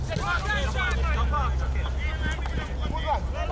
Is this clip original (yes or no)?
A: yes